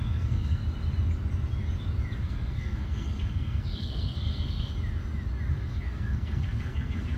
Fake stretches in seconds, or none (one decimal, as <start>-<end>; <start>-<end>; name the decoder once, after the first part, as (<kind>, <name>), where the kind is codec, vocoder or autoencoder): 0.0-0.6 (codec, SNAC); 2.2-4.7; 5.5-7.2